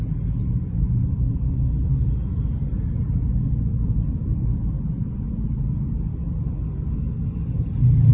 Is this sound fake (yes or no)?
no